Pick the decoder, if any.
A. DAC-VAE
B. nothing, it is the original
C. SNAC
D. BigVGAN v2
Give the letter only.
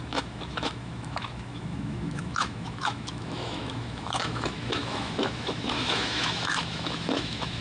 A